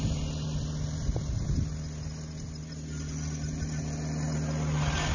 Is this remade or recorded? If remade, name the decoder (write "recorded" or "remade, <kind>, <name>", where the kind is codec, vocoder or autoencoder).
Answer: recorded